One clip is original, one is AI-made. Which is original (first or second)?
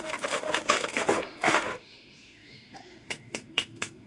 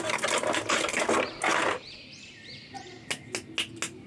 second